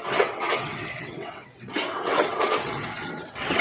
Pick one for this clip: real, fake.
fake